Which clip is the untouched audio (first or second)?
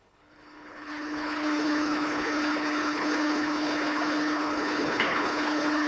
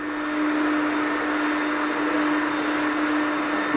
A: second